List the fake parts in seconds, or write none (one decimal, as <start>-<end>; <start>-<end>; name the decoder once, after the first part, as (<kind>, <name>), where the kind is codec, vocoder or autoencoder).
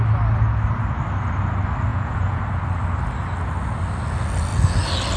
1.9-2.4 (vocoder, Vocos)